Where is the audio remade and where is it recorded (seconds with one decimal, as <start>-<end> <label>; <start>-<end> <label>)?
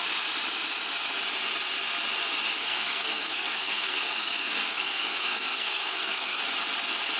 0.0-2.6 recorded; 2.6-6.4 remade; 6.4-7.2 recorded